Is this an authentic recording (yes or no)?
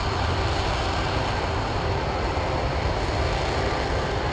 yes